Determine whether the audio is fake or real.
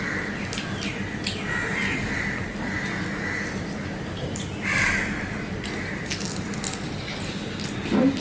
real